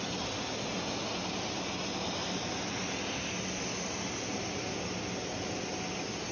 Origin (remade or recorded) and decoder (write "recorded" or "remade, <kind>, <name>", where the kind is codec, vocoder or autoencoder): recorded